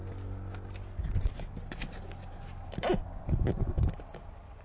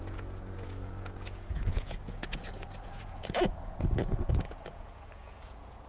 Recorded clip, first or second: first